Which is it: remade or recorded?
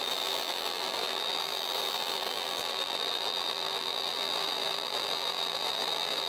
remade